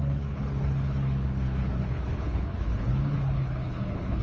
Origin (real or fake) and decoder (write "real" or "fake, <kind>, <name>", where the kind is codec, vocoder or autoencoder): fake, codec, HILCodec